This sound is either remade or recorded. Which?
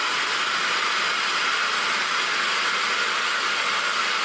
recorded